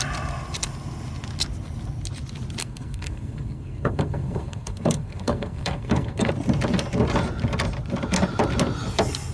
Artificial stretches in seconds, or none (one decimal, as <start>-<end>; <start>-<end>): 2.6-6.3